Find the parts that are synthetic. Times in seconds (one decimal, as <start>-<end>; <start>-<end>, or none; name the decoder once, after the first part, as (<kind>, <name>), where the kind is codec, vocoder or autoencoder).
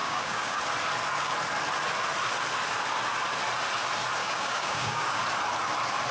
0.0-0.6 (codec, DAC); 4.2-5.2